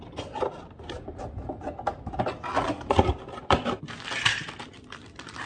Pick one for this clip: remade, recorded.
recorded